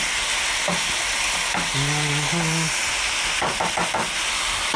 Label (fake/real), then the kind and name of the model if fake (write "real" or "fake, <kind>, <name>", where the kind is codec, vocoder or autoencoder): real